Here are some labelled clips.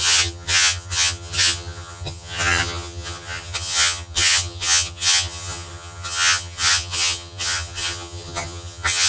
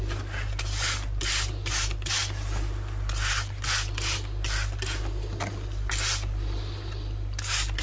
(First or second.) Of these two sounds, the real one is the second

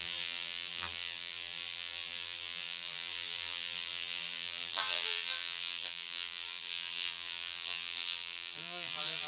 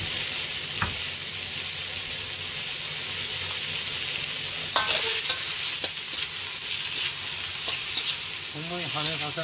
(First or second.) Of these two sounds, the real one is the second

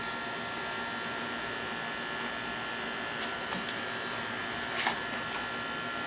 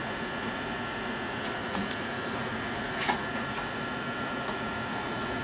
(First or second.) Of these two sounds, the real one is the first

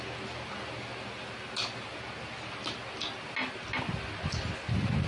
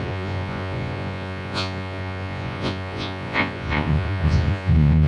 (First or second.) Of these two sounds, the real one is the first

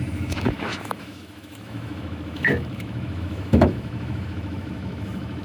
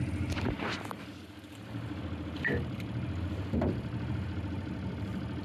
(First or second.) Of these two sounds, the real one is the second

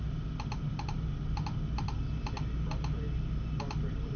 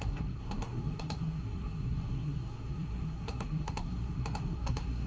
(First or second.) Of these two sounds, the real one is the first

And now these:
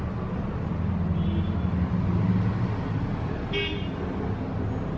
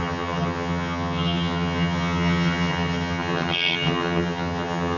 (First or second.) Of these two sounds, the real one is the first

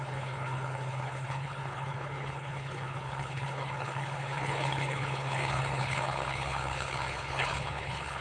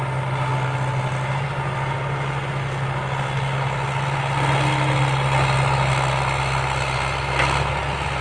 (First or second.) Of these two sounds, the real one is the second